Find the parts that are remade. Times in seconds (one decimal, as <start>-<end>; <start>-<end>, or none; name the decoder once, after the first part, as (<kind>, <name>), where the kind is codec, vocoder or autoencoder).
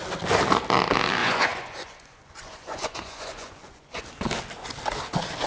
1.2-4.0 (vocoder, Vocos)